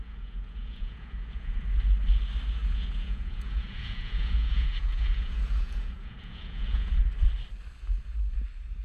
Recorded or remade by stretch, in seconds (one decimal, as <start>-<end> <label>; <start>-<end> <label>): 0.0-1.6 remade; 1.6-2.6 recorded; 2.6-7.0 remade; 7.0-8.8 recorded